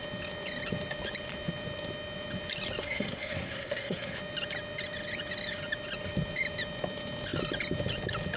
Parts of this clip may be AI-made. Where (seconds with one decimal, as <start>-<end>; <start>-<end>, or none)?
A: 2.8-4.2